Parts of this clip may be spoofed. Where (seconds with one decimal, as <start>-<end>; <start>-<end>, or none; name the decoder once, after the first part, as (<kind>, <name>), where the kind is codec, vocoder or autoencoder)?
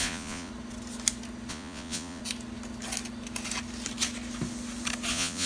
0.0-0.5 (vocoder, Vocos); 1.5-2.2; 5.1-5.5